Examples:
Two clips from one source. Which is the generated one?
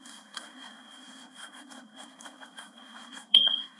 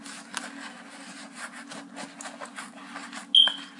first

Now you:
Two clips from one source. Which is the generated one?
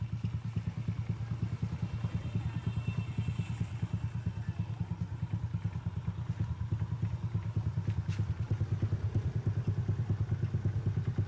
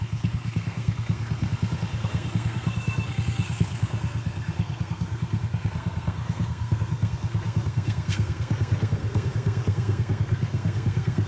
second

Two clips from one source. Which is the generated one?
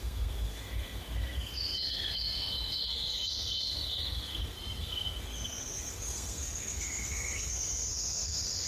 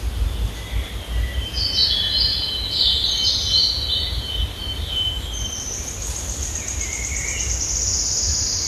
first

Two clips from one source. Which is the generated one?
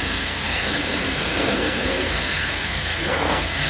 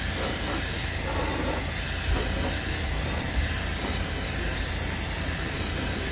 first